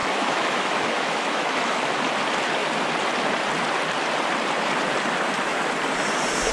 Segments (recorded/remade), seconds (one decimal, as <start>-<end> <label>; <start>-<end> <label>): 0.0-1.9 remade; 1.9-6.5 recorded